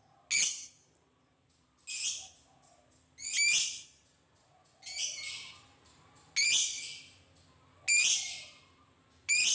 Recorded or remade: recorded